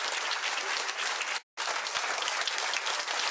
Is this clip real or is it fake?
real